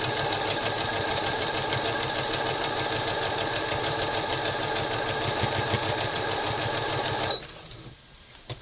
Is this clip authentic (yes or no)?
no